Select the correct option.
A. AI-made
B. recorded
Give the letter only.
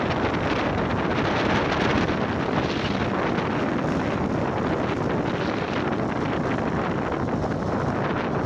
B